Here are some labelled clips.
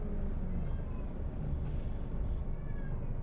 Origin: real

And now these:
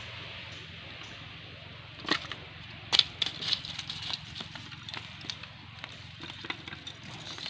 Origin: real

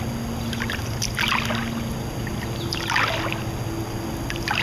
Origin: real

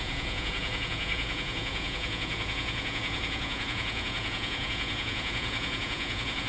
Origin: fake